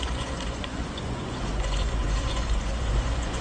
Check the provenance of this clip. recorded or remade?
remade